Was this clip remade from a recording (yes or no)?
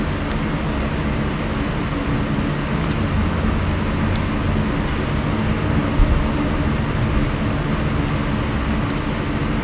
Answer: no